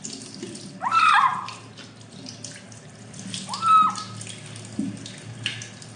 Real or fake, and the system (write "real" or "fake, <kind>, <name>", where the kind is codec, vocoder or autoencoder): real